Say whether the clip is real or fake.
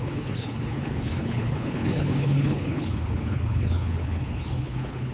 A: fake